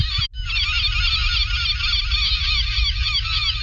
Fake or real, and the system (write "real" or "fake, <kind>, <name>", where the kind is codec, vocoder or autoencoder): real